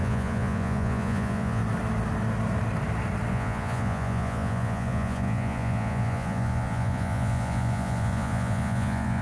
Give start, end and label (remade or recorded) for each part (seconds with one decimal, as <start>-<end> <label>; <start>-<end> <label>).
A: 0.0-1.6 remade; 1.6-3.3 recorded; 3.3-9.2 remade